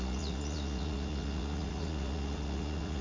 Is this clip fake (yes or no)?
yes